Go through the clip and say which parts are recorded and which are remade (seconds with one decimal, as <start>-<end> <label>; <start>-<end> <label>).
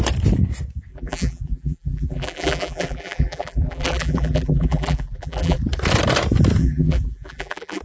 0.0-0.9 recorded; 0.9-5.6 remade; 5.6-6.6 recorded; 6.6-7.8 remade